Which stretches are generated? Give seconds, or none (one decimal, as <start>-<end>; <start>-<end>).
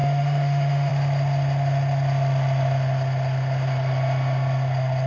0.0-0.9